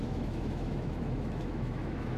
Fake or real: fake